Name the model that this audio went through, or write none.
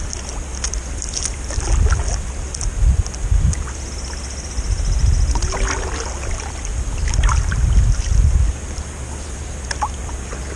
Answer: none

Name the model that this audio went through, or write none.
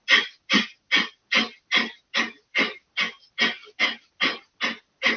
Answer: none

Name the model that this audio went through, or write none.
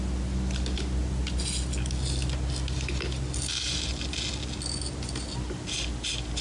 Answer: none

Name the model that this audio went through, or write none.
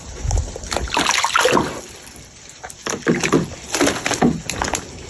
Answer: none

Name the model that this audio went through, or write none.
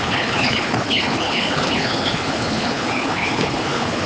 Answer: codec, HILCodec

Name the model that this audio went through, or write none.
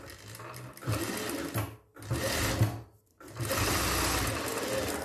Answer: none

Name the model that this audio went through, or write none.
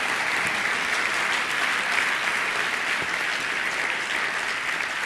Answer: none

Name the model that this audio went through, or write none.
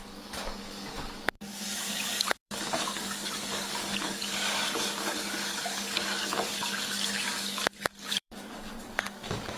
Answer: codec, DAC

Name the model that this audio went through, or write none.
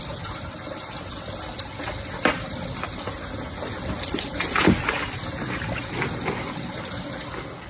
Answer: none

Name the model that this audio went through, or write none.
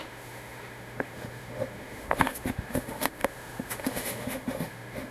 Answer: autoencoder, DAC-VAE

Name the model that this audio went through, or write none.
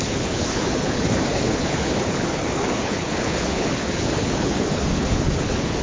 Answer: codec, HILCodec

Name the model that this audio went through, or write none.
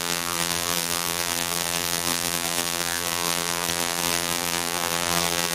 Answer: vocoder, BigVGAN v2